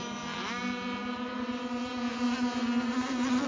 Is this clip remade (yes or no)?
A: no